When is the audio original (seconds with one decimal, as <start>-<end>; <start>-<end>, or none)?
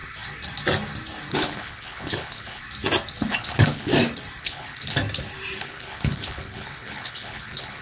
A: 0.0-1.3; 2.6-3.3; 3.9-4.4; 5.0-5.6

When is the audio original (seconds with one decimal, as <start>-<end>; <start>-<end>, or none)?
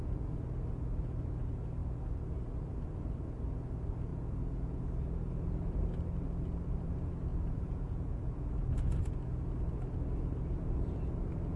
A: 0.0-4.1; 4.8-7.3; 8.2-11.6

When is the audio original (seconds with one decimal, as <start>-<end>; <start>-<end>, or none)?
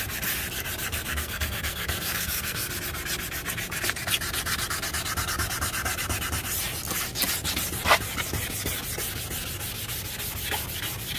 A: 0.0-0.9; 2.7-11.2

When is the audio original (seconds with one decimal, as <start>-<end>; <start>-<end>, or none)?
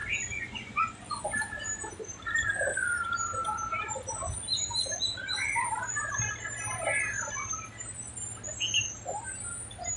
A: 1.2-10.0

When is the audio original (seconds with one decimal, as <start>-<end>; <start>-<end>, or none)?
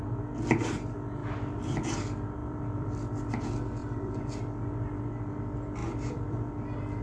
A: 0.0-1.2; 1.9-2.4; 3.3-3.8; 4.4-5.8; 6.5-7.0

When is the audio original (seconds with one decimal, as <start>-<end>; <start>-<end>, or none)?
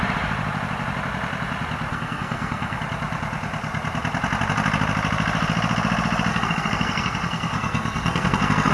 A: 0.0-1.9; 2.8-6.3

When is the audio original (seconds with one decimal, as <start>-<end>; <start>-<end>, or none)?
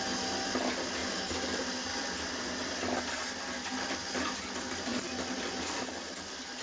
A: 0.0-6.6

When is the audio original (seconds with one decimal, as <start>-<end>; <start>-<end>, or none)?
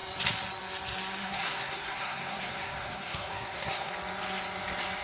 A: 0.0-1.2; 3.9-5.0